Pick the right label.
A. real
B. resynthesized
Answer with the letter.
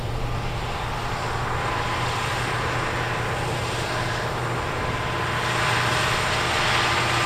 A